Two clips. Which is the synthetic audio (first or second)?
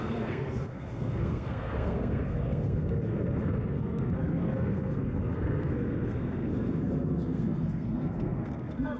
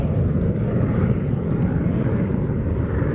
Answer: first